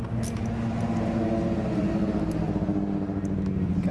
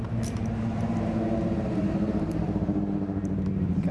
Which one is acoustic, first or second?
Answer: first